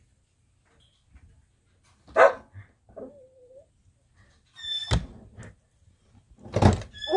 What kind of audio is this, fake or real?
real